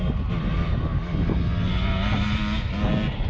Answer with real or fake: real